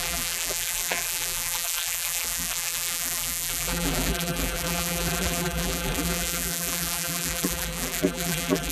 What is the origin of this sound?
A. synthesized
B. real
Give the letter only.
A